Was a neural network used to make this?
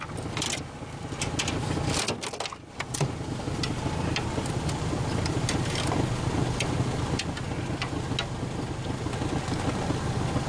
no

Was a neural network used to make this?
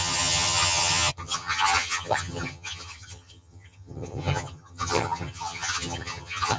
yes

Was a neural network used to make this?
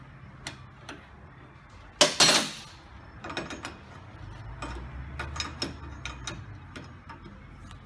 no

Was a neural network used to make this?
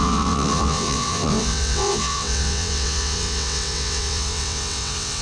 yes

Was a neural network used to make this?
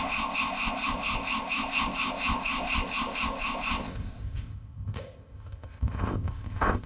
yes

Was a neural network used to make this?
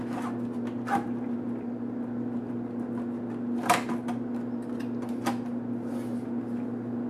no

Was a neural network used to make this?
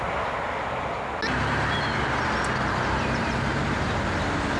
no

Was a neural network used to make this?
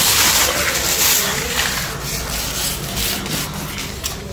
no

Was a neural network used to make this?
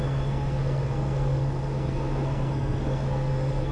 yes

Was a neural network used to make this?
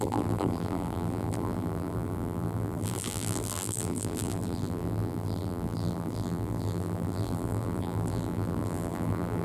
yes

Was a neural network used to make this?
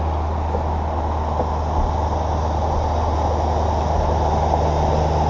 no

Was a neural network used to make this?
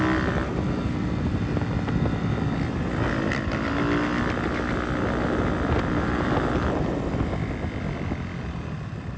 no